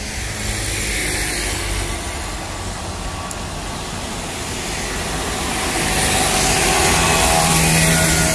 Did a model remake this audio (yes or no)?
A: no